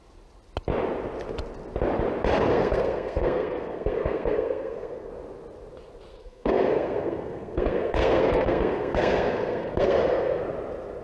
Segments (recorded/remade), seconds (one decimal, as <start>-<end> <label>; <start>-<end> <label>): 0.0-2.5 recorded; 2.5-5.1 remade; 5.1-6.1 recorded; 6.1-10.4 remade; 10.4-11.0 recorded